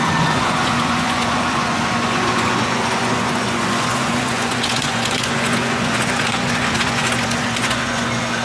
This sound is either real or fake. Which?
fake